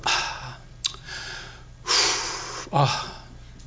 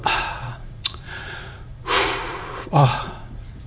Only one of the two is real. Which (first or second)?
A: first